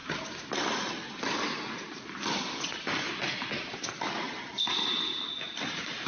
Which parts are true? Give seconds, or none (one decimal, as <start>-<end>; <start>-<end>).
0.0-6.1